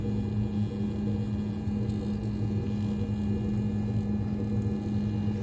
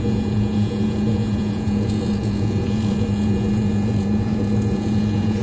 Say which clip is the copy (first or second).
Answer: second